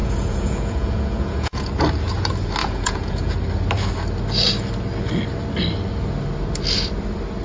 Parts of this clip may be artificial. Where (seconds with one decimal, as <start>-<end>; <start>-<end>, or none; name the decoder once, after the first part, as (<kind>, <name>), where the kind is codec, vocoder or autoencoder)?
0.0-1.7 (vocoder, Vocos); 2.6-3.3